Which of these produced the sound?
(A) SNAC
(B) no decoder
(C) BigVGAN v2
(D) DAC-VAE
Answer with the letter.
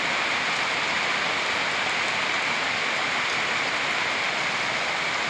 B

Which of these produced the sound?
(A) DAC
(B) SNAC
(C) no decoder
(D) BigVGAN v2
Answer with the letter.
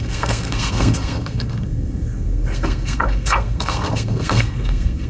B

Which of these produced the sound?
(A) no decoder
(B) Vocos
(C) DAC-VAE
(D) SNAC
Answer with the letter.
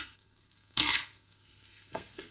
D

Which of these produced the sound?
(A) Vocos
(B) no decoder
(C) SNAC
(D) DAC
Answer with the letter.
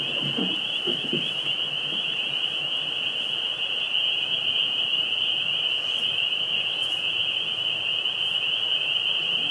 B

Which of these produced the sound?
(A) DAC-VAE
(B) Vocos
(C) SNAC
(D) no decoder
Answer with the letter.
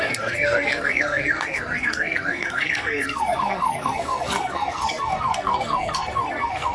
C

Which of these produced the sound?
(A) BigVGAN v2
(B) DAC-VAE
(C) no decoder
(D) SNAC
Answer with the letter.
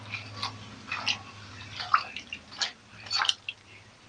C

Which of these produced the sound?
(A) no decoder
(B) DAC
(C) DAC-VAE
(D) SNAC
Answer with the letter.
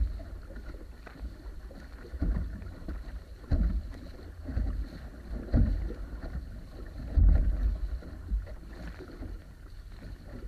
A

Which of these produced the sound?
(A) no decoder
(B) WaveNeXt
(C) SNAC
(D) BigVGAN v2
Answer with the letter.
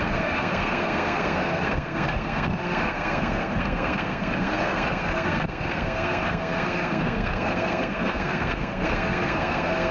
C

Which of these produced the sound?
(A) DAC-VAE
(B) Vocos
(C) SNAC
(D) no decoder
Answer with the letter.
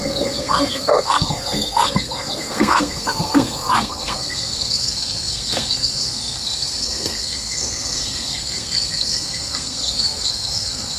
C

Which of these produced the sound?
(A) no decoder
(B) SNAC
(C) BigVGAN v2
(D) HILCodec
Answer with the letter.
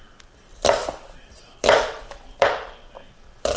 A